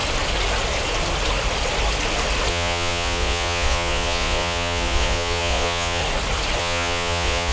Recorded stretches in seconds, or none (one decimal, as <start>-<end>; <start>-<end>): 0.0-2.5; 6.0-6.6